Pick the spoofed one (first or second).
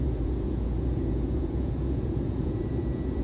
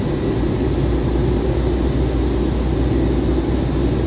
first